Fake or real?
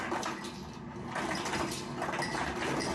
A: real